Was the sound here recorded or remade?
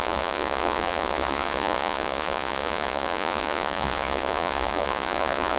remade